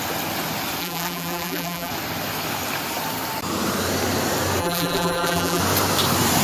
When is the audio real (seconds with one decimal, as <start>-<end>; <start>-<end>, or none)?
0.0-0.8; 1.9-4.6; 5.6-6.4

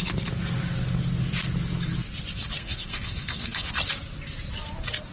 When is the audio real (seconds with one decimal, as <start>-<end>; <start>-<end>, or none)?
0.0-2.6; 3.7-5.1

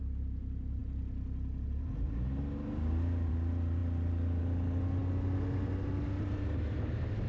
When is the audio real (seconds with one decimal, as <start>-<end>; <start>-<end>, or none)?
0.0-7.3

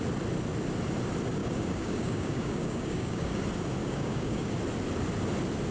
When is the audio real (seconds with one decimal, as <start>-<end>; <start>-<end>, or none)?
0.0-1.4; 3.4-3.8; 4.5-5.7

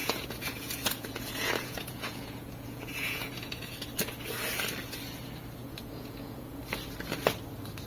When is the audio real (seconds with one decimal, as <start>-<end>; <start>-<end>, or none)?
3.7-5.6; 6.6-7.9

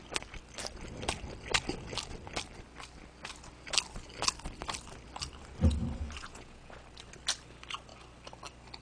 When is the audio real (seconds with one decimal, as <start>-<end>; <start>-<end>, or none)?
0.0-6.2; 6.8-8.8

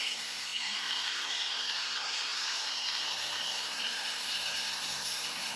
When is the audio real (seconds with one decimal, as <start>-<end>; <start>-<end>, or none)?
none

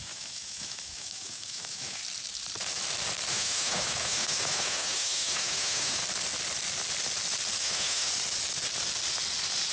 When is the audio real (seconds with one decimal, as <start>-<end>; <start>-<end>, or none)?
2.0-3.3; 6.0-7.6; 8.1-9.7